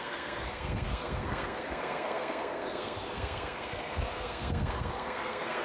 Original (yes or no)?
no